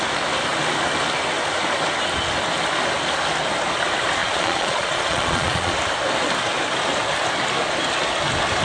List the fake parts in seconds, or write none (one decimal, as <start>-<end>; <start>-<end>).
4.2-5.7